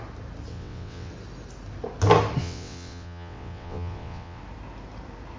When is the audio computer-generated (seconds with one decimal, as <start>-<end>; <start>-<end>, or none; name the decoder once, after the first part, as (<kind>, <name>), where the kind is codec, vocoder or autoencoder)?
0.5-1.1 (vocoder, WaveNeXt); 2.4-4.4